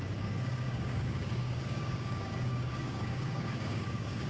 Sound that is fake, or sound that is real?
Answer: fake